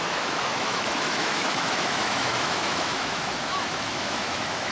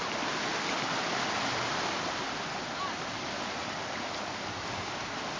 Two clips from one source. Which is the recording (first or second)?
second